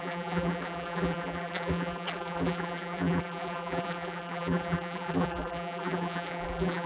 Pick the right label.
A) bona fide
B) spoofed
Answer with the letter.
B